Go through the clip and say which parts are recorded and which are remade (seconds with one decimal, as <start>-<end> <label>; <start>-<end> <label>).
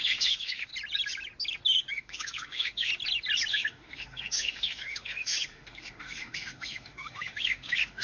0.0-0.7 remade; 0.7-1.9 recorded; 1.9-2.9 remade; 2.9-3.5 recorded; 3.5-8.0 remade